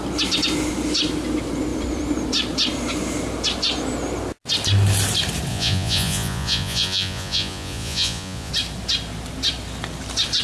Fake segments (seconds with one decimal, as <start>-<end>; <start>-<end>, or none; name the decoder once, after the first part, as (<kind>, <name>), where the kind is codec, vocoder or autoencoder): 5.5-8.5 (vocoder, Vocos)